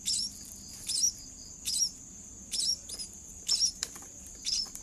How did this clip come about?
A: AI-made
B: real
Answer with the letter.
A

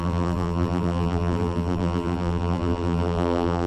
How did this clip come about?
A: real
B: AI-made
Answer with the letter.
B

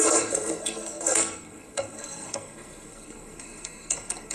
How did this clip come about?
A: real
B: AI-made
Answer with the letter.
B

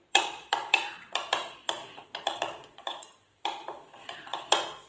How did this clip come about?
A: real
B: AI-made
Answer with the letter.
B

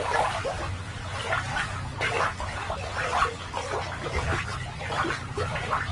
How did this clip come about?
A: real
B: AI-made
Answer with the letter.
A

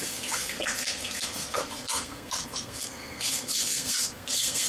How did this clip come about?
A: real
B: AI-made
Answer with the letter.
B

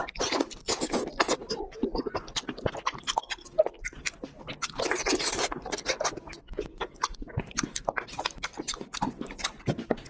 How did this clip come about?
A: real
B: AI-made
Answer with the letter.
A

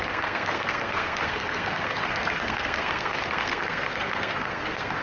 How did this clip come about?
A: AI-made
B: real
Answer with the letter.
A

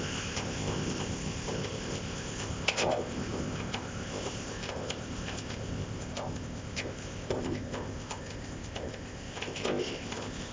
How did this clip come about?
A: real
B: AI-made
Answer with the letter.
B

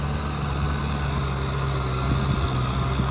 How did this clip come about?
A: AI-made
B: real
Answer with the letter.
B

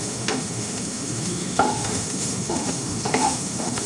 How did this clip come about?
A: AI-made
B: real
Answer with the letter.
A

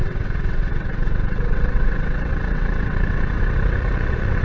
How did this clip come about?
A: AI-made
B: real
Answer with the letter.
A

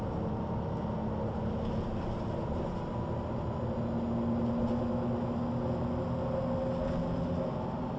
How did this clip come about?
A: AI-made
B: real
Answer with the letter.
B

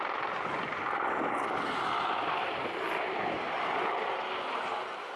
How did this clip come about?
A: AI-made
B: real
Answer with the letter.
B